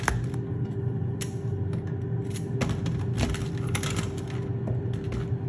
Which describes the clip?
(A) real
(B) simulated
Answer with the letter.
A